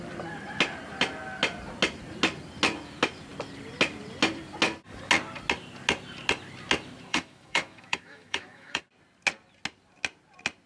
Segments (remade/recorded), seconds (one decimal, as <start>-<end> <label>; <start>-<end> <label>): 0.0-7.1 recorded; 7.1-8.8 remade; 8.8-10.7 recorded